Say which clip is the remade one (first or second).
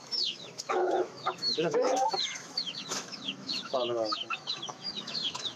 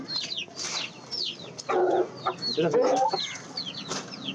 first